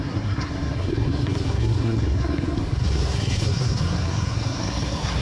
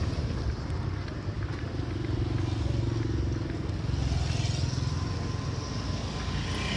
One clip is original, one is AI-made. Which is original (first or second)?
second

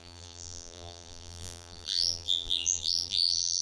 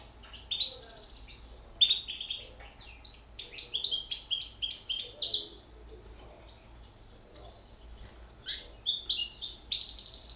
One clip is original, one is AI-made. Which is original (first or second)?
second